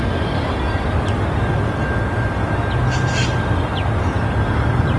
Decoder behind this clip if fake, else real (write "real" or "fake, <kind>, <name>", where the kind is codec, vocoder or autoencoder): real